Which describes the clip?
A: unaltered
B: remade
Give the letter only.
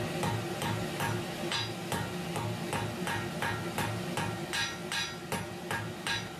A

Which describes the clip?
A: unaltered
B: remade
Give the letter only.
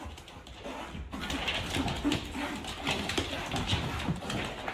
A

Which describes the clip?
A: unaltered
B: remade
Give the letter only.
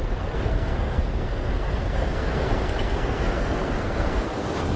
B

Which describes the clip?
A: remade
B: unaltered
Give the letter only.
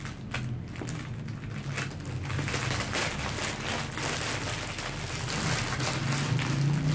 B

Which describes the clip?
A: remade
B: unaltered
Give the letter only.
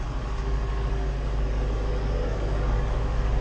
A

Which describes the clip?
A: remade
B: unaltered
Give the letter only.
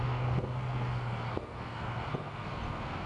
A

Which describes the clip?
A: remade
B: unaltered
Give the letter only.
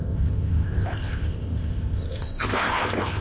A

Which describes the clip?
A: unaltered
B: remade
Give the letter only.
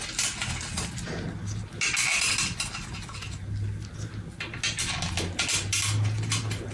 A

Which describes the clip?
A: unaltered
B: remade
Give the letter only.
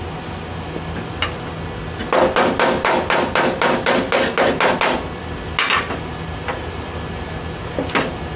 A